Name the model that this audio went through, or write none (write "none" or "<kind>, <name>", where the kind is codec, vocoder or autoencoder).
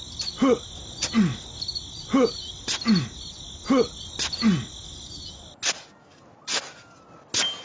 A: none